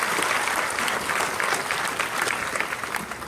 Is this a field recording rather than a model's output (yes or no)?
yes